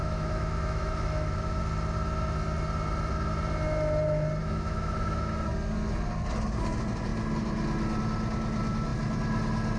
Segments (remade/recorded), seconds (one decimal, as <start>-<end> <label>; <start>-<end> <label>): 0.0-1.6 remade; 1.6-4.4 recorded; 4.4-5.3 remade; 5.3-9.8 recorded